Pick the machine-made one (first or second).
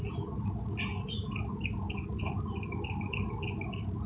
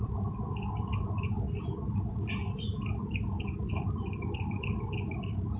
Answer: second